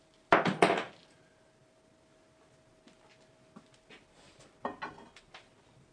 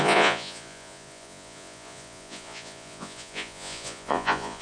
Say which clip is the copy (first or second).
second